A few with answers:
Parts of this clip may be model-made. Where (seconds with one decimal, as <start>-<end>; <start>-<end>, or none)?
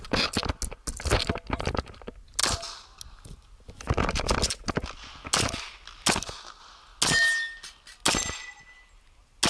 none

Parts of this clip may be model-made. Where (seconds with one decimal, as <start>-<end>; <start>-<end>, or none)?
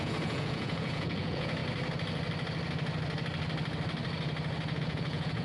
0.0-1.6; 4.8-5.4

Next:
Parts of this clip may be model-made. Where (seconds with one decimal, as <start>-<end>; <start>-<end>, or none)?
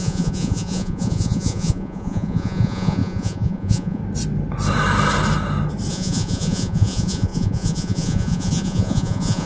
0.0-4.0; 5.9-9.5